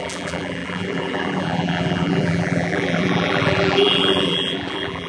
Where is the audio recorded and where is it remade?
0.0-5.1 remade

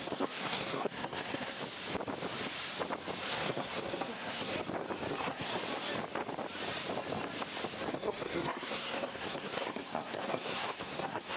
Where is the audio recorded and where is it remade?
0.0-1.6 remade; 1.6-3.3 recorded; 3.3-4.5 remade; 4.5-5.1 recorded; 5.1-5.5 remade; 5.5-7.9 recorded; 7.9-11.4 remade

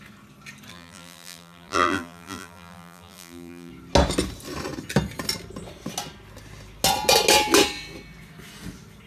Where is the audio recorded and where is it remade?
0.0-0.7 recorded; 0.7-3.7 remade; 3.7-9.1 recorded

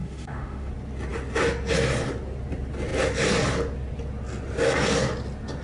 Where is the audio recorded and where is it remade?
0.0-0.7 remade; 0.7-5.6 recorded

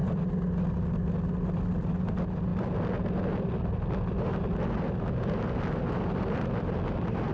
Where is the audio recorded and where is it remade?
0.0-7.3 recorded